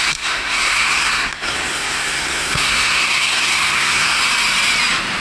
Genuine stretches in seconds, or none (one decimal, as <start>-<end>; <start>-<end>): 4.2-5.2